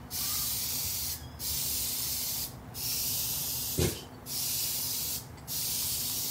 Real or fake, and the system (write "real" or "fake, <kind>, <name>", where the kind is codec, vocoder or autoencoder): real